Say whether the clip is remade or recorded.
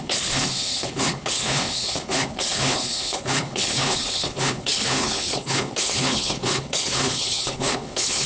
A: remade